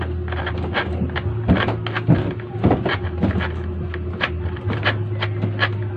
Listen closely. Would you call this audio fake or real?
real